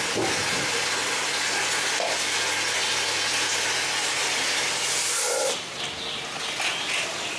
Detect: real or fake real